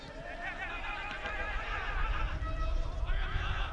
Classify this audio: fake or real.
real